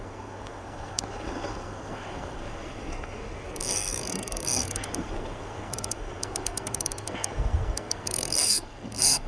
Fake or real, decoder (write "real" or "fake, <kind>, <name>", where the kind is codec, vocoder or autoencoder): fake, codec, SNAC